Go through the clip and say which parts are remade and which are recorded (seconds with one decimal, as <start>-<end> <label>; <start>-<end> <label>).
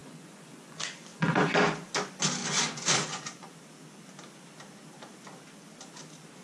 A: 0.0-1.9 remade; 1.9-2.4 recorded; 2.4-3.6 remade; 3.6-6.4 recorded